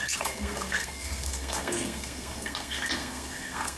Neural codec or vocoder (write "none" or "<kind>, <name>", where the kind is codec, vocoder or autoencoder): codec, SNAC